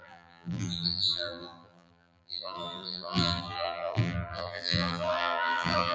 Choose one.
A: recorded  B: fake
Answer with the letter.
B